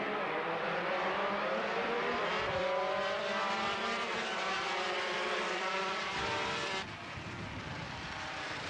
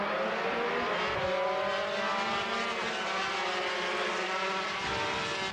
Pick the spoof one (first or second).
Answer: first